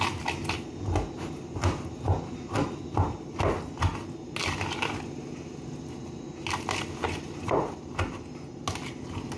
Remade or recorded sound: recorded